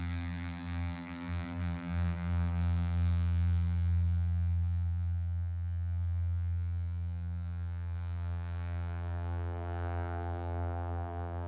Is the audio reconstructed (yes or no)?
yes